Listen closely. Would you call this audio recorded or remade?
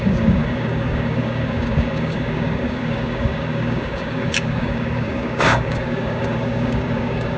remade